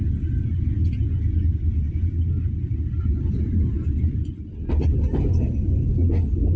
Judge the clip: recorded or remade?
recorded